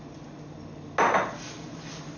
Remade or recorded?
recorded